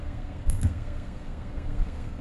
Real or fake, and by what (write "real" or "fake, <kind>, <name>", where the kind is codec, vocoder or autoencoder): fake, codec, SNAC